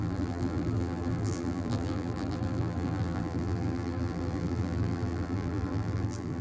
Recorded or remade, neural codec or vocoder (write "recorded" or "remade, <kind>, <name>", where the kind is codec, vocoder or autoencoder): remade, vocoder, BigVGAN v2